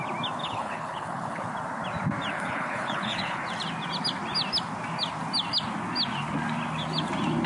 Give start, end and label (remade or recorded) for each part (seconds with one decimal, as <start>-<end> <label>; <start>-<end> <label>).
0.0-0.4 recorded; 0.4-1.5 remade; 1.5-2.3 recorded; 2.3-3.4 remade; 3.4-7.5 recorded